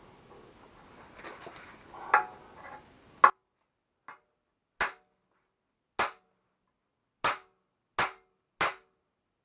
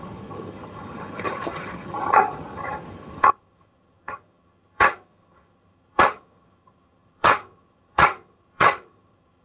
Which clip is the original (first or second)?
first